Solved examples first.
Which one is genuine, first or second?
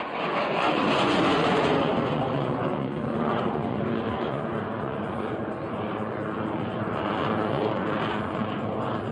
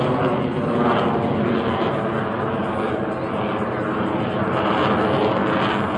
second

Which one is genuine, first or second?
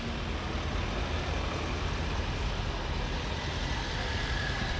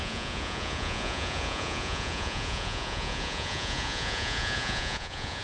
first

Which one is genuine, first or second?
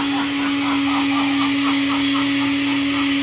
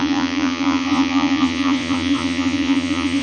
first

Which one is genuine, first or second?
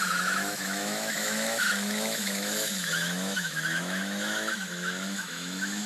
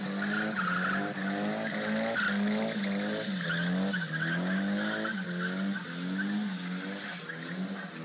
second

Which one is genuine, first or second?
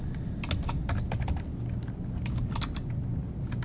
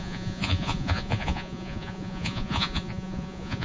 first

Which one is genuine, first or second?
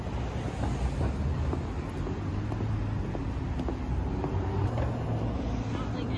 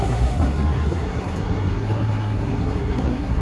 first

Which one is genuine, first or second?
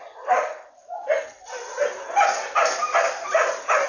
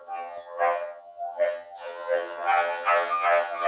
first